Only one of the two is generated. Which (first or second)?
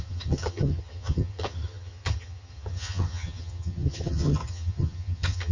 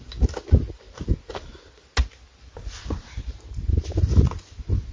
first